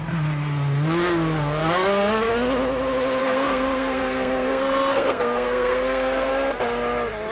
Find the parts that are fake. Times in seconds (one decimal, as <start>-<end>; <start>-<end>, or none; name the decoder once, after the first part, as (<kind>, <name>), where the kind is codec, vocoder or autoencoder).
1.6-2.3 (codec, SNAC); 3.2-6.3